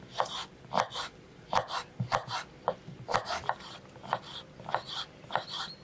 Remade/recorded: recorded